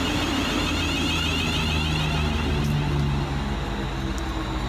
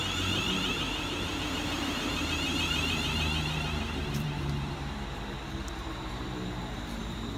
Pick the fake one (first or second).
second